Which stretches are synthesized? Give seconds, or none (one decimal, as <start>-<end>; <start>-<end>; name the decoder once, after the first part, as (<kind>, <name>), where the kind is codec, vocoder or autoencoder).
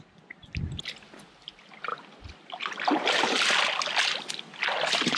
none